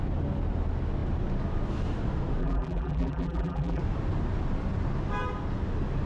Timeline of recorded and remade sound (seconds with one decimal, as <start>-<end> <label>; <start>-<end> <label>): 0.0-2.4 recorded; 2.4-3.8 remade; 3.8-6.1 recorded